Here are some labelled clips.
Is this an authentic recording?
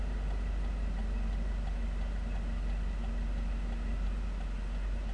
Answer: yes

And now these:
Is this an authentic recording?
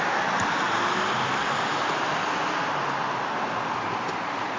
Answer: yes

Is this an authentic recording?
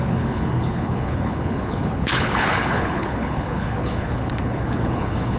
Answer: no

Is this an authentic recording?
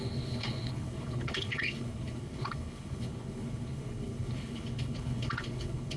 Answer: no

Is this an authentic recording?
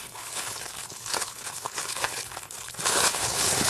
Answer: no